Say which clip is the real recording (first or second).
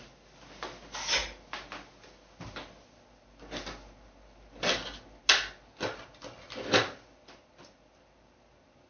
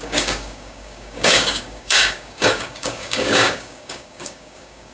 first